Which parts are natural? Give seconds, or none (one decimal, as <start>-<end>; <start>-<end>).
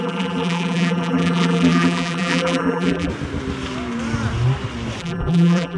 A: 3.1-5.0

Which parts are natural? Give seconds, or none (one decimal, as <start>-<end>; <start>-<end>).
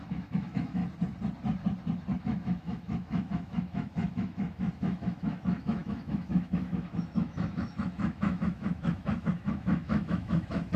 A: 0.8-2.2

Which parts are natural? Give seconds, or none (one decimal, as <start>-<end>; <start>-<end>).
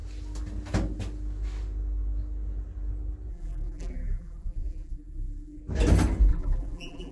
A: 0.0-3.3; 5.6-6.3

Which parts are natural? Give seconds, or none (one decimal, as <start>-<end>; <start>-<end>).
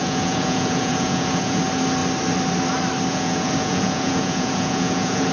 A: 1.6-3.1